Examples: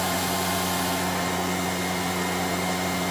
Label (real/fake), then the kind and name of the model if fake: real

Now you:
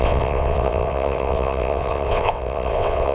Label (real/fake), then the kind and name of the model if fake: fake, vocoder, WaveNeXt